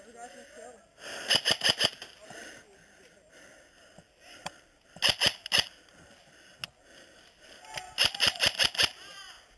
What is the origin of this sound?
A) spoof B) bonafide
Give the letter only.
B